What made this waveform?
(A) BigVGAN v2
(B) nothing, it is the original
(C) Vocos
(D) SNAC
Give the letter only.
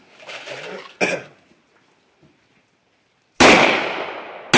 B